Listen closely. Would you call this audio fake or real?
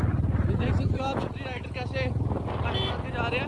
real